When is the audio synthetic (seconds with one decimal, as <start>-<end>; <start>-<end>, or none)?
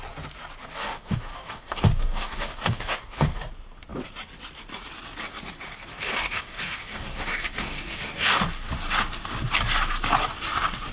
0.6-3.4; 5.9-8.4